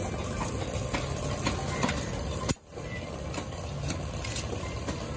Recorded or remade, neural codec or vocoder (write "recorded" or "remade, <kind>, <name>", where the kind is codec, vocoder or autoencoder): recorded